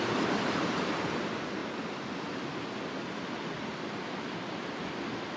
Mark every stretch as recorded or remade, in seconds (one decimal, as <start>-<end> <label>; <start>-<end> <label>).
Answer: 0.0-5.4 recorded